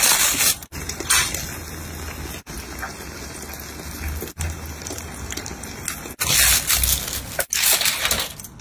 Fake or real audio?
real